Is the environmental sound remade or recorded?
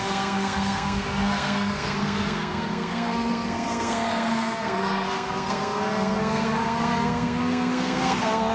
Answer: remade